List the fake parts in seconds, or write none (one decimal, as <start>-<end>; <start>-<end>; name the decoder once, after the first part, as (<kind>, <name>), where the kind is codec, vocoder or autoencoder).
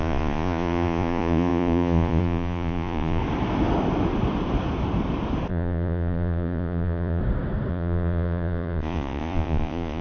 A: 0.0-3.2 (vocoder, Vocos); 5.5-7.2; 7.7-10.0